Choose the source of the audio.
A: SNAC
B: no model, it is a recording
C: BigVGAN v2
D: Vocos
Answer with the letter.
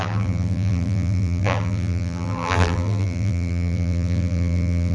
C